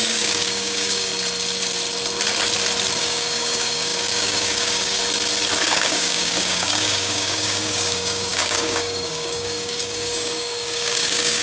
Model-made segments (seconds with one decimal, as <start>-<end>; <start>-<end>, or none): 0.0-1.1; 3.0-5.0; 5.6-11.4